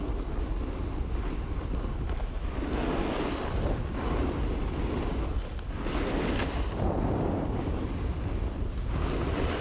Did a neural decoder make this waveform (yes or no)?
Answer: no